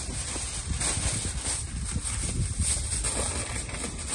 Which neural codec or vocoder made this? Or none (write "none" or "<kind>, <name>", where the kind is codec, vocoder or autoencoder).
none